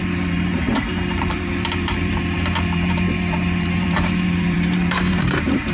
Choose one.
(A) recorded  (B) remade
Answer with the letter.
B